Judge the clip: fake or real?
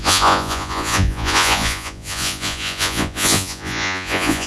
fake